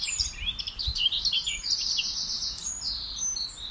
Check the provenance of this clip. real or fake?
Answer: fake